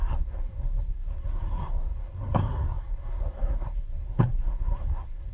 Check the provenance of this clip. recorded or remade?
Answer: remade